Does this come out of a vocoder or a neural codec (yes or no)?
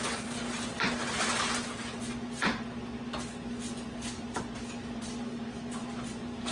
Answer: no